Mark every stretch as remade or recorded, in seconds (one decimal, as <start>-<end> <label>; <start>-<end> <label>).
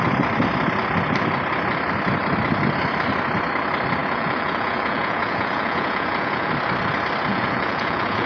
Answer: 0.0-4.0 recorded; 4.0-6.5 remade; 6.5-7.3 recorded; 7.3-8.3 remade